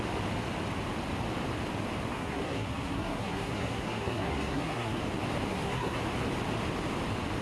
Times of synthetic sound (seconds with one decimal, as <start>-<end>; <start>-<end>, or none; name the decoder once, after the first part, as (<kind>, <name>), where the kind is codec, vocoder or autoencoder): 2.1-5.0 (codec, SNAC); 5.5-6.0